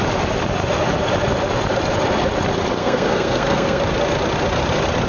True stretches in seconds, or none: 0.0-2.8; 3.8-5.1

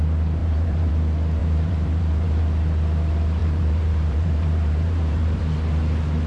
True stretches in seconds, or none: 0.0-0.4; 0.9-1.4; 2.4-3.4; 5.4-6.3

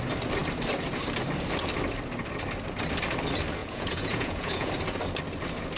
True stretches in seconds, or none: 0.0-3.6; 4.7-5.8

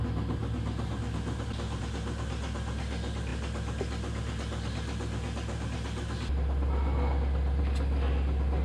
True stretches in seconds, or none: 0.0-8.6